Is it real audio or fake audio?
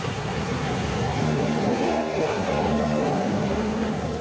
fake